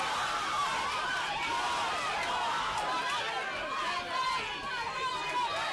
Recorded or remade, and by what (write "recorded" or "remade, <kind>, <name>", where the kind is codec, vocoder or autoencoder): recorded